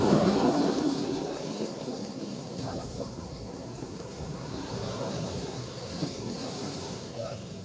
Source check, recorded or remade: remade